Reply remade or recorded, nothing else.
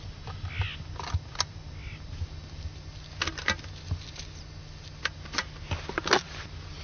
recorded